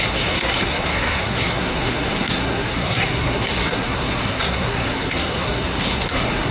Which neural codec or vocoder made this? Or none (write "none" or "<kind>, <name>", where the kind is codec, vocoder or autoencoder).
codec, SNAC